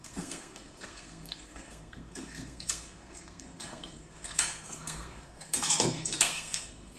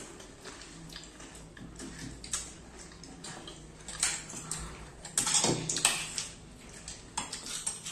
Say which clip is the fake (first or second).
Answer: first